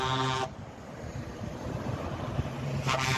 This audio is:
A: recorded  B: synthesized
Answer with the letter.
B